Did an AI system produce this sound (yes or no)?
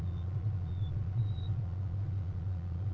yes